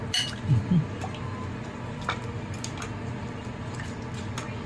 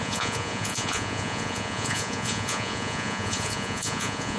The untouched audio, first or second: first